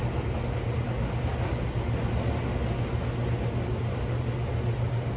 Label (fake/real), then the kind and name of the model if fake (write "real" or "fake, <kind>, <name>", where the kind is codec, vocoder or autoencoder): real